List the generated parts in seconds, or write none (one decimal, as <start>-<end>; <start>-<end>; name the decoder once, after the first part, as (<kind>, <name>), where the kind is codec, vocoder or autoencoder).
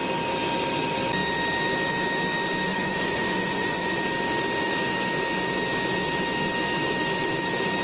2.7-4.0 (vocoder, Vocos)